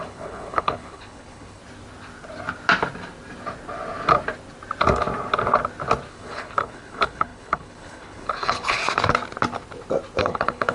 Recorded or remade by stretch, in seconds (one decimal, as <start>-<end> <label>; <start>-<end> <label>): 0.0-1.6 remade; 1.6-6.1 recorded; 6.1-8.8 remade; 8.8-10.2 recorded; 10.2-10.7 remade